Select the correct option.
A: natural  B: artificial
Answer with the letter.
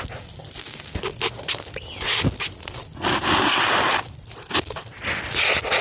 A